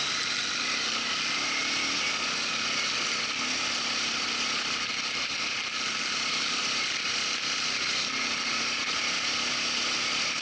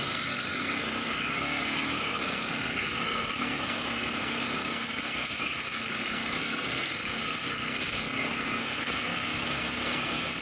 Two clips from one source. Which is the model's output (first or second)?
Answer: second